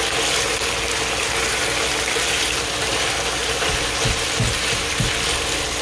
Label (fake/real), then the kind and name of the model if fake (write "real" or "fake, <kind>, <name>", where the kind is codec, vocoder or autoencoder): real